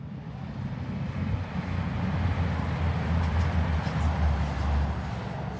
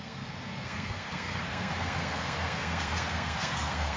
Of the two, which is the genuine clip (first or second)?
first